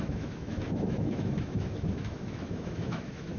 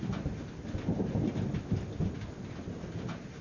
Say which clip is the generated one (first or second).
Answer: first